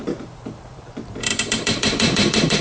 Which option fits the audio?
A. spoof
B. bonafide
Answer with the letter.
A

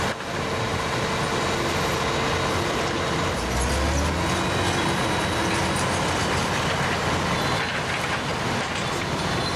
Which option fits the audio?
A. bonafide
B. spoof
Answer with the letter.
A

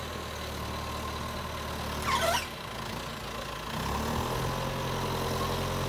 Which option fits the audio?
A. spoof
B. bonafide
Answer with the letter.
B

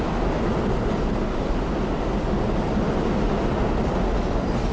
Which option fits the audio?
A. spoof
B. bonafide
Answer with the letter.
B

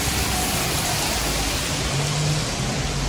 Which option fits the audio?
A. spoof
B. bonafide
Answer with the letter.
B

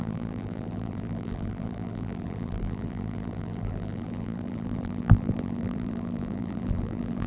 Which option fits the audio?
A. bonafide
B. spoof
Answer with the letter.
B